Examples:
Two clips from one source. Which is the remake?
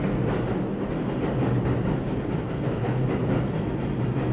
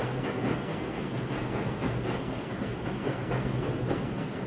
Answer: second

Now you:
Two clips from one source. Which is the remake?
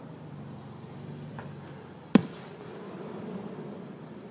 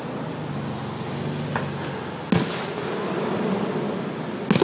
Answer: first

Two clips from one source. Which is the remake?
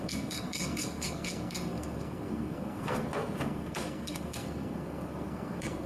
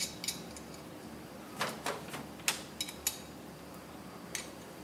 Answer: first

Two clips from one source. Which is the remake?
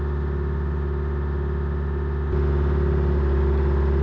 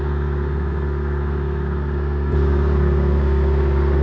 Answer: second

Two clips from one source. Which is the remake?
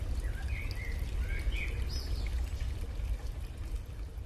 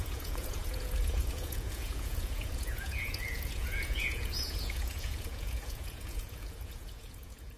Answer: second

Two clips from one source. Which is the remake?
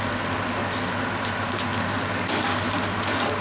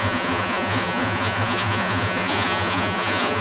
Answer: second